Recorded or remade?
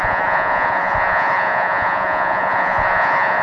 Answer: remade